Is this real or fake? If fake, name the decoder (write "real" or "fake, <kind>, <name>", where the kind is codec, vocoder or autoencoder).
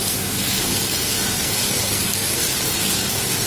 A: fake, codec, SNAC